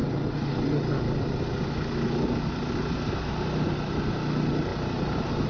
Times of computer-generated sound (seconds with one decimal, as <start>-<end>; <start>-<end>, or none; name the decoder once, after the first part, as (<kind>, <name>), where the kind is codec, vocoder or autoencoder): 4.7-5.5 (vocoder, BigVGAN v2)